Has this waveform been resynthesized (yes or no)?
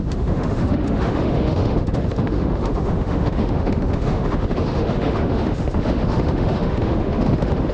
yes